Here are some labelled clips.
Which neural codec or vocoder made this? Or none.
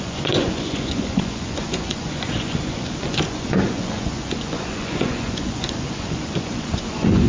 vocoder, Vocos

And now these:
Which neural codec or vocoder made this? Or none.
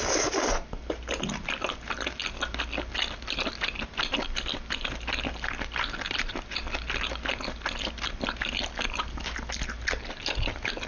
none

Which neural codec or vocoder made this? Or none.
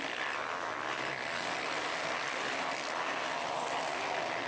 none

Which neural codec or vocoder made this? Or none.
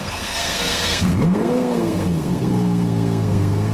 codec, SNAC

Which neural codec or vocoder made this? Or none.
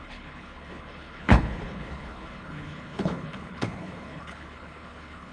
codec, HILCodec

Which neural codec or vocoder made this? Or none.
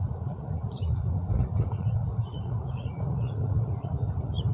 vocoder, Vocos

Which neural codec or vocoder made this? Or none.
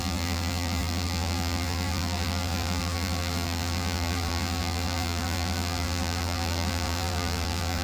vocoder, BigVGAN v2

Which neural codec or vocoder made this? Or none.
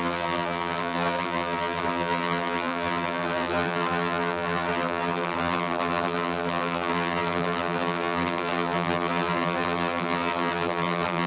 vocoder, BigVGAN v2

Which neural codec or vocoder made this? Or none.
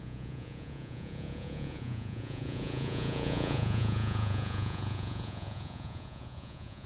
vocoder, Vocos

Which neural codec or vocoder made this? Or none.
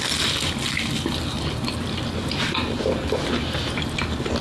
none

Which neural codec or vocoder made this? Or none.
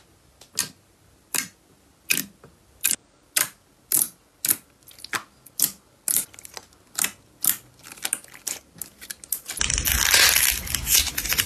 none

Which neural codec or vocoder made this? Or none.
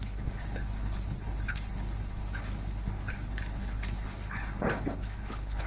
codec, HILCodec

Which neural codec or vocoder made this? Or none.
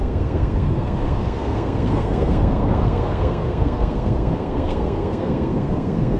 codec, SNAC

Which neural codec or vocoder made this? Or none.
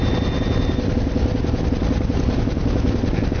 none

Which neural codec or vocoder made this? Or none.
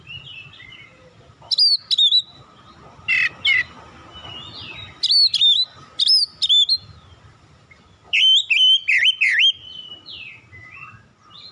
none